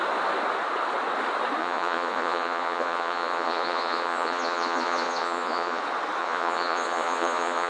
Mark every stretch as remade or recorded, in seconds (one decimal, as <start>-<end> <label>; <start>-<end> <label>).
0.0-1.6 recorded; 1.6-5.8 remade; 5.8-6.2 recorded; 6.2-7.7 remade